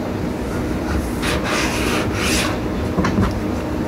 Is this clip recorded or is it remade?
recorded